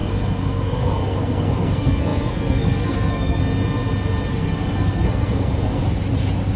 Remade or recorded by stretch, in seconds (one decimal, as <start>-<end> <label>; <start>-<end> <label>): 0.0-3.4 remade; 3.4-4.3 recorded; 4.3-5.8 remade; 5.8-6.6 recorded